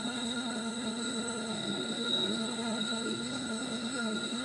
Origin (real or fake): fake